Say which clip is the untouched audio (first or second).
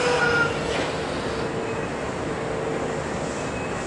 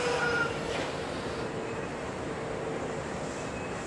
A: first